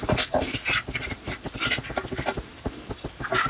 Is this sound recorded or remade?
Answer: remade